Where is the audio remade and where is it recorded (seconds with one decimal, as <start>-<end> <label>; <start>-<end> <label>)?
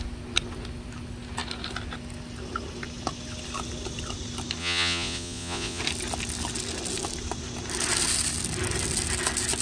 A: 0.0-4.6 recorded; 4.6-5.8 remade; 5.8-9.6 recorded